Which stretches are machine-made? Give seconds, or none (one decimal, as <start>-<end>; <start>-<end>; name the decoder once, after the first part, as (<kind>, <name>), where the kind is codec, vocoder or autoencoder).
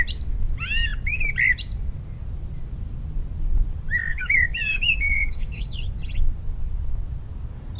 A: 4.1-5.8 (codec, DAC)